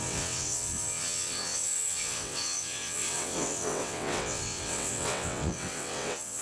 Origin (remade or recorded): remade